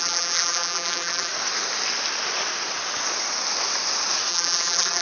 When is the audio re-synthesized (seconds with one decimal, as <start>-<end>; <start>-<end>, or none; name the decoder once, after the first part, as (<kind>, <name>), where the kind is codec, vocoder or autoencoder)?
0.0-1.3 (vocoder, BigVGAN v2); 4.3-5.0

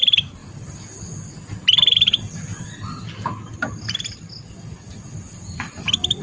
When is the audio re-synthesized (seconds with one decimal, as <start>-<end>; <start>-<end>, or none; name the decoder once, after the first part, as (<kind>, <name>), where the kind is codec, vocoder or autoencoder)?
none

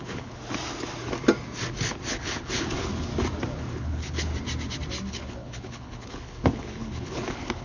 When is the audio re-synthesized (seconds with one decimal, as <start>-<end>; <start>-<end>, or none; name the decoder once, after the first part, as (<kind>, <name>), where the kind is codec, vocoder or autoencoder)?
0.0-0.4 (codec, HILCodec); 2.1-3.1; 3.8-4.3; 5.1-7.6

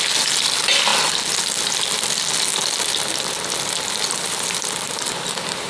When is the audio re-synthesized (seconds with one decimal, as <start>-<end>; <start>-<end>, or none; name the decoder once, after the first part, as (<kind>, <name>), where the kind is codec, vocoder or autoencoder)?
0.0-5.7 (vocoder, BigVGAN v2)

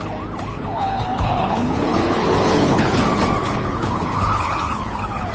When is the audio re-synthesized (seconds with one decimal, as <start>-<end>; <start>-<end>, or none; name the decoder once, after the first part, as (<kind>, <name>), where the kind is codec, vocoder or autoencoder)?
0.5-3.0 (codec, HILCodec); 3.4-5.3